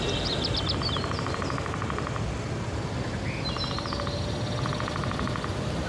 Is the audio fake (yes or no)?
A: no